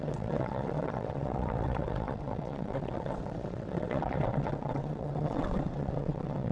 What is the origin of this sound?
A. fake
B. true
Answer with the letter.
A